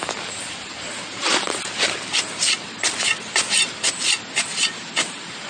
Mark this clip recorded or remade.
recorded